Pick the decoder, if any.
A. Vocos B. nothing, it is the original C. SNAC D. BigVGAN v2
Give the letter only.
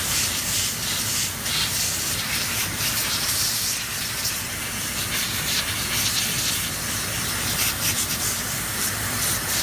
D